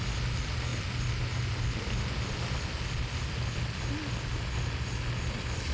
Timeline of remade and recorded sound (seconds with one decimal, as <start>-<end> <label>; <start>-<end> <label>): 0.0-5.7 recorded